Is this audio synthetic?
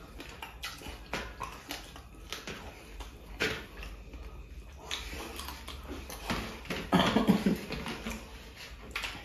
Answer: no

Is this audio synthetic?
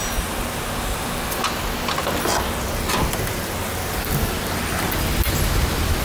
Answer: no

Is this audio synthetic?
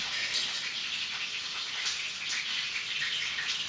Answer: no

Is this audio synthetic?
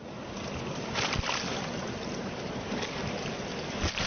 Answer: no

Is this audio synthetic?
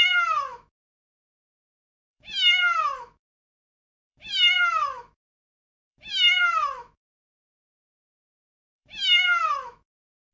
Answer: yes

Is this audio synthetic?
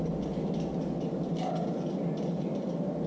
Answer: no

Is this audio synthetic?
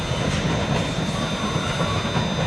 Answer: no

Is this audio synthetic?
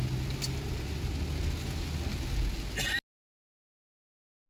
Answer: no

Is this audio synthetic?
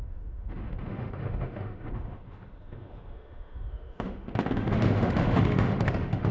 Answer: yes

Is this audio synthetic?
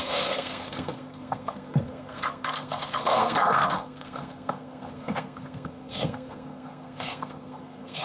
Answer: yes